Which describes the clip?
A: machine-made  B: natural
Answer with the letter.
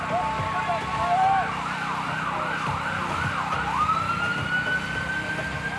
B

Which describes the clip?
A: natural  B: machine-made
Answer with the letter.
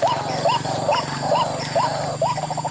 A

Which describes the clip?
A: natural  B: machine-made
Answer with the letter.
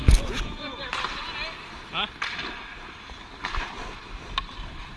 A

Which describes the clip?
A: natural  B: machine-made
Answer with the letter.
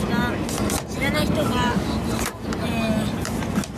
A